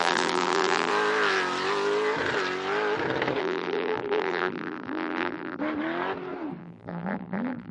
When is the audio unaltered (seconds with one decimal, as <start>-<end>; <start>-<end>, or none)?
0.9-3.4; 5.6-6.6